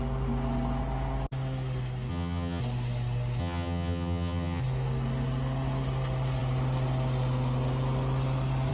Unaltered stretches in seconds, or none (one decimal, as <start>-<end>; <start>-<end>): 0.0-2.1; 2.6-3.4; 4.6-8.7